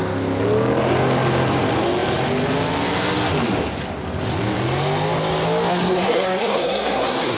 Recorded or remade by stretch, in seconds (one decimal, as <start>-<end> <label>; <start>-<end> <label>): 0.0-5.7 recorded; 5.7-7.4 remade

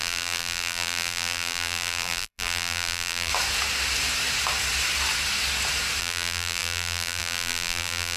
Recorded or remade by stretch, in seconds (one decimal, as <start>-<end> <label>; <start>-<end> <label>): 0.0-3.3 remade; 3.3-6.0 recorded; 6.0-8.2 remade